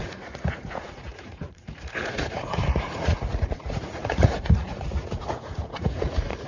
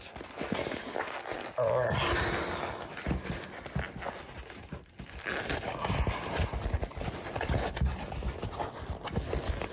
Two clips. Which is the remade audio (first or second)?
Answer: first